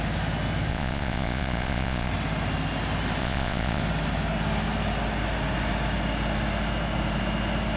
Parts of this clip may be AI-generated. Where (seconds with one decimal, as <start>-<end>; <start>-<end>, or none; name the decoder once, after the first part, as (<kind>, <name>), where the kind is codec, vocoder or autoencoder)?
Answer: 0.7-2.1 (vocoder, Vocos); 3.2-3.8